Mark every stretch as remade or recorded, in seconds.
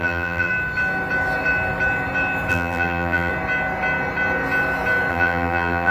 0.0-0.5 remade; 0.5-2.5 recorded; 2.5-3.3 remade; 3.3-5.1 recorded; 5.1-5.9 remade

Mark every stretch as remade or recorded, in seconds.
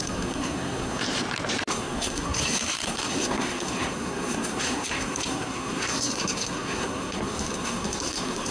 0.0-1.0 remade; 1.0-1.7 recorded; 1.7-8.5 remade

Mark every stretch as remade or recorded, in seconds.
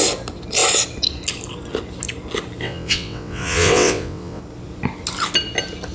0.0-2.6 recorded; 2.6-4.4 remade; 4.4-5.9 recorded